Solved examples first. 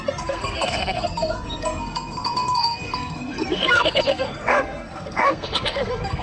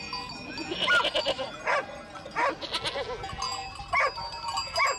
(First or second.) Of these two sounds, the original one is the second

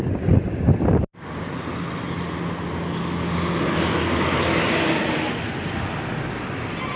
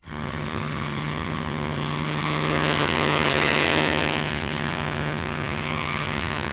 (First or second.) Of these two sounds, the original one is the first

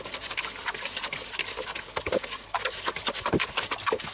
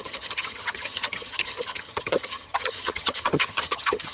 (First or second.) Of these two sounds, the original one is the first